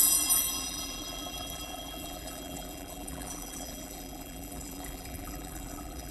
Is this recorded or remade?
remade